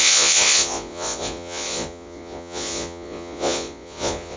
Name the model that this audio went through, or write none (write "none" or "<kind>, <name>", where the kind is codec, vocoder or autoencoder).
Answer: vocoder, Vocos